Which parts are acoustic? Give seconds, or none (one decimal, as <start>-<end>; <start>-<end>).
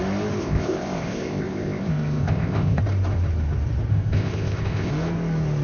0.0-0.4; 2.8-3.9; 4.9-5.6